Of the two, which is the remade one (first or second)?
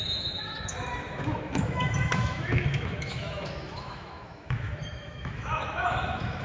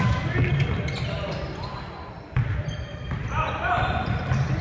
first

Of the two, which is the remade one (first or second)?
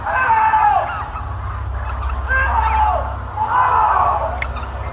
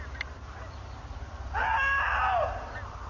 second